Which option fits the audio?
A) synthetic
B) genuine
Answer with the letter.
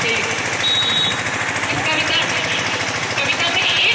B